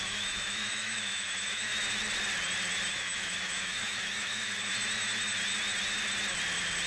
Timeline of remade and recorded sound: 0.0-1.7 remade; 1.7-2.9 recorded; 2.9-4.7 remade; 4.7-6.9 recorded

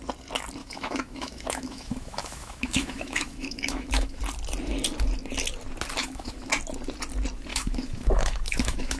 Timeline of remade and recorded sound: 0.0-0.6 recorded; 0.6-4.2 remade; 4.2-6.0 recorded; 6.0-6.5 remade; 6.5-7.5 recorded; 7.5-9.0 remade

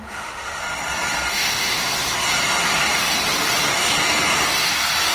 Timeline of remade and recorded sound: 0.0-0.6 remade; 0.6-1.3 recorded; 1.3-1.8 remade; 1.8-5.1 recorded

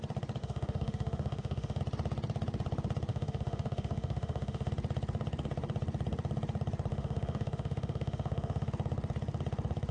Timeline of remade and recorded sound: 0.0-0.4 recorded; 0.4-1.8 remade; 1.8-3.1 recorded; 3.1-4.7 remade; 4.7-6.9 recorded; 6.9-8.7 remade; 8.7-9.9 recorded

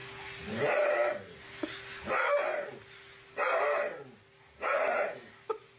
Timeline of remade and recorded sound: 0.0-5.8 recorded